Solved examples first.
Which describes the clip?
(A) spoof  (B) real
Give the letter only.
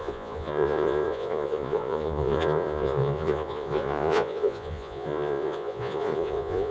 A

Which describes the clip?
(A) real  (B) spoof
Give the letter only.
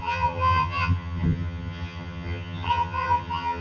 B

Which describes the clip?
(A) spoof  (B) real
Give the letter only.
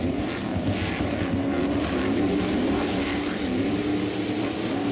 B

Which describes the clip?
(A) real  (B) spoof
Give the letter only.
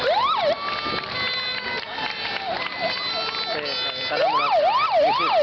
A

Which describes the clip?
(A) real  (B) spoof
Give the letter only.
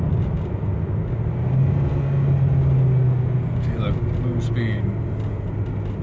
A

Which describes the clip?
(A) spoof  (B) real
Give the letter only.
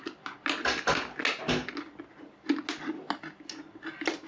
B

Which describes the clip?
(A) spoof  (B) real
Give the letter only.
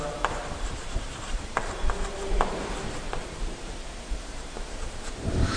A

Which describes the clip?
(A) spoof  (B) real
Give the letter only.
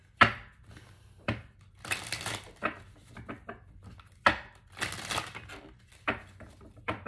B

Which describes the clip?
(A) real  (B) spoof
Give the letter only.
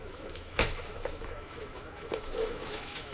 B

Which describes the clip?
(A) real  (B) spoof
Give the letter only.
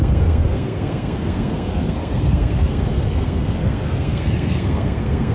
B